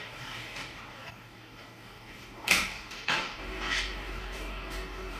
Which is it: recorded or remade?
remade